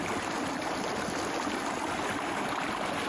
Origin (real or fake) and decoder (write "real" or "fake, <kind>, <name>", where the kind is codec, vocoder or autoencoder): real